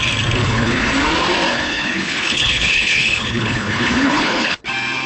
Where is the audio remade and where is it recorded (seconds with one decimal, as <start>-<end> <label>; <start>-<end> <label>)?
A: 0.0-0.4 recorded; 0.4-0.9 remade; 0.9-1.5 recorded; 1.5-4.6 remade; 4.6-5.1 recorded